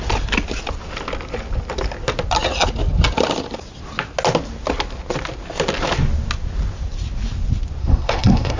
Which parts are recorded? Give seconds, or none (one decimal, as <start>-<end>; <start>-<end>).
0.0-7.8